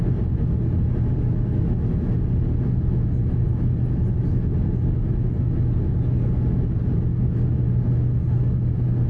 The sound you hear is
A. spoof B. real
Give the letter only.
B